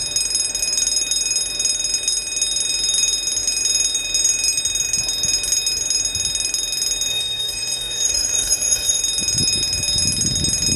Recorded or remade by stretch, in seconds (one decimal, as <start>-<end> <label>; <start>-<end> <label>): 0.0-7.1 recorded; 7.1-9.0 remade; 9.0-10.8 recorded